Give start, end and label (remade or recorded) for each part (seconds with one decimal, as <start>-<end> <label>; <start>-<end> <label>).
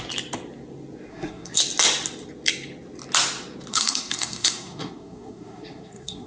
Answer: 0.0-1.1 recorded; 1.1-1.6 remade; 1.6-3.7 recorded; 3.7-6.3 remade